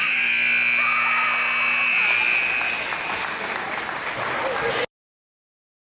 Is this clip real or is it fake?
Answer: real